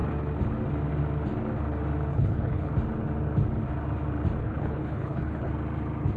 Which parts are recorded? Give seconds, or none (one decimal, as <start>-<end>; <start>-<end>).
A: 0.0-2.1; 2.7-4.4; 5.5-6.2